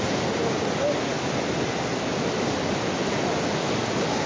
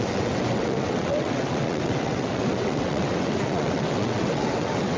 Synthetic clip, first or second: second